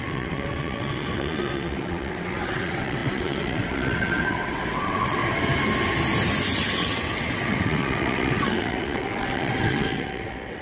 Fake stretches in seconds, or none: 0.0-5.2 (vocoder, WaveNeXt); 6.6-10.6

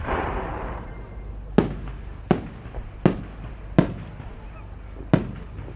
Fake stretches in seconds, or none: none

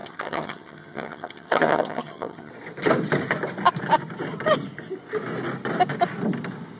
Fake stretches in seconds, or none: 0.0-2.5 (vocoder, HiFi-GAN)

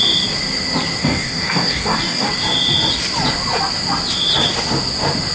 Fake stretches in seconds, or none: 1.0-2.3 (codec, DAC)